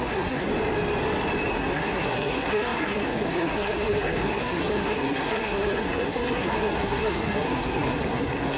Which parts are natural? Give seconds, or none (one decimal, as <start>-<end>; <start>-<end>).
0.5-1.5